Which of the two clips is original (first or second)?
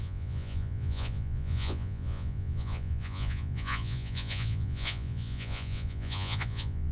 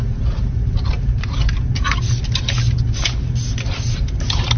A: second